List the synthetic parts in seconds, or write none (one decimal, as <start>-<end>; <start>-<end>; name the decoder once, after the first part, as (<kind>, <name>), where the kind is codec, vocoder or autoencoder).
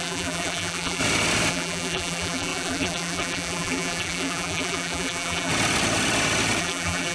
0.0-1.0 (vocoder, BigVGAN v2); 1.5-5.5; 6.6-7.1